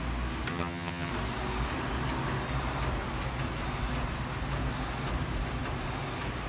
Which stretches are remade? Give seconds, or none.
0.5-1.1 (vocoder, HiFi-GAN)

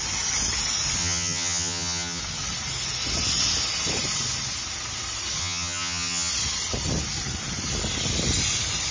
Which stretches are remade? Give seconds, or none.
1.0-2.2 (vocoder, HiFi-GAN); 5.4-6.3

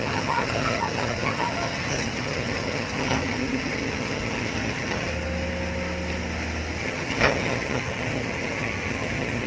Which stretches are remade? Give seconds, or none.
0.0-5.1 (vocoder, HiFi-GAN); 6.8-9.5

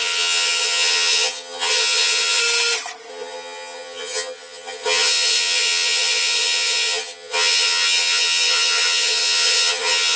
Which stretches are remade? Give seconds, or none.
0.0-2.4 (vocoder, HiFi-GAN); 3.1-10.2

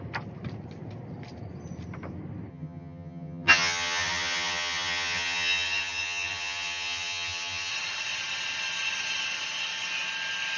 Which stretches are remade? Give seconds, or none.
2.5-7.7 (vocoder, HiFi-GAN)